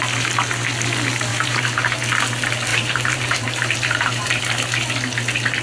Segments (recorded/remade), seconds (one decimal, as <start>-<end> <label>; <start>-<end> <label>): 0.0-1.3 recorded; 1.3-1.8 remade; 1.8-2.7 recorded; 2.7-4.4 remade; 4.4-5.6 recorded